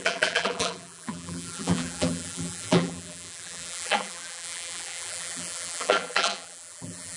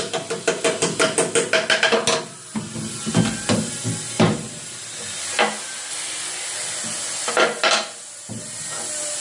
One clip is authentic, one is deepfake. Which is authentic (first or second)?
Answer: second